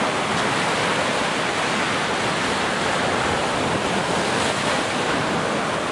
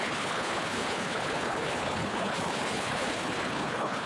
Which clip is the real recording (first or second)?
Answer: first